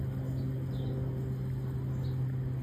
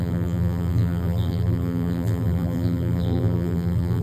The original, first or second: first